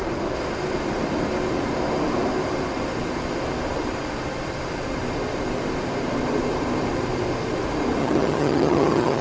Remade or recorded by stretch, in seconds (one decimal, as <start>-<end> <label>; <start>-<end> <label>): 0.0-8.0 recorded; 8.0-9.2 remade